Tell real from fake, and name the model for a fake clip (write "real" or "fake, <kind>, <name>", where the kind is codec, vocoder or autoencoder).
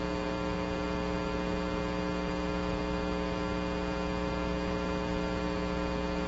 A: real